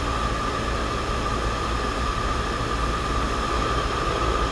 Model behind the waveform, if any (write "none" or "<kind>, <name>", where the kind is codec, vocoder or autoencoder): none